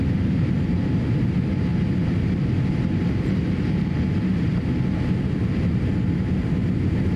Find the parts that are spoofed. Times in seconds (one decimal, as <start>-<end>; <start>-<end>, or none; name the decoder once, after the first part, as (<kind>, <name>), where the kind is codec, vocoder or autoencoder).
none